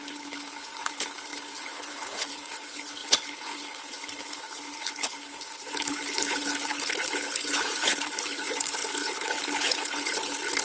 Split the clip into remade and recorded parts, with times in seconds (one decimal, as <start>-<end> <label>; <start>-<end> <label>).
0.0-10.6 remade